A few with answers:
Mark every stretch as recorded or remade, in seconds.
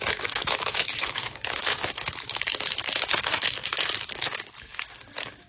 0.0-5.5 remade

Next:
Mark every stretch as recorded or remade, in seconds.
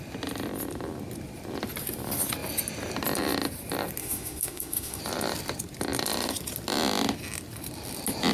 0.0-4.0 recorded; 4.0-5.0 remade; 5.0-8.3 recorded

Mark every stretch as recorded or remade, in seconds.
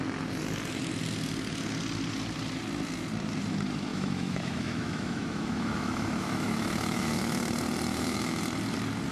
0.0-3.9 recorded; 3.9-7.5 remade; 7.5-7.9 recorded; 7.9-8.4 remade; 8.4-9.1 recorded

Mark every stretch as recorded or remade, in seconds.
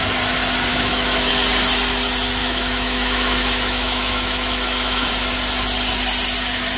0.0-0.7 recorded; 0.7-1.3 remade; 1.3-2.4 recorded; 2.4-5.1 remade; 5.1-6.8 recorded